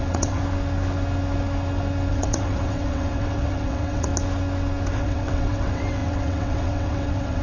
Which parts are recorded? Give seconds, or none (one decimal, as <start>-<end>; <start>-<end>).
0.4-2.1; 4.1-4.9